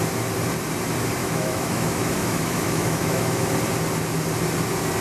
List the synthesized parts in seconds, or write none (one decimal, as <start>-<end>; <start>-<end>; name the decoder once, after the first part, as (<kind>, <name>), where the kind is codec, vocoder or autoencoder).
1.2-3.5 (autoencoder, DAC-VAE)